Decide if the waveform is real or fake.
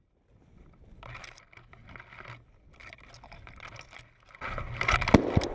real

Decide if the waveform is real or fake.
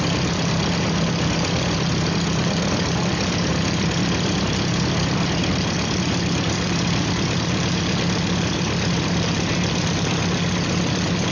real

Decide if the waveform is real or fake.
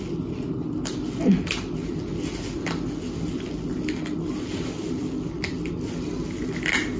real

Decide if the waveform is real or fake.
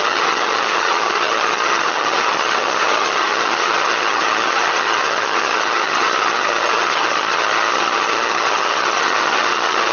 fake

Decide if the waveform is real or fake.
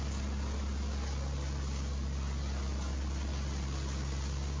real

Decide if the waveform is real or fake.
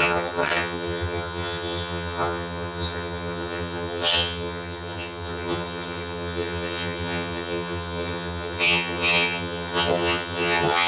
fake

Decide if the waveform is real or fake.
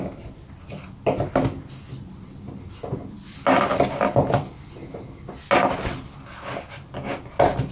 real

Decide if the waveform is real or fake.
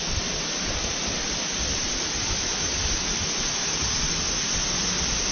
real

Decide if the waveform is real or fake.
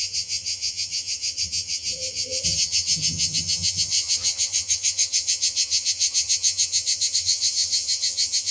fake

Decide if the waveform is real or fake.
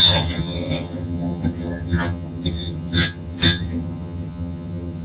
fake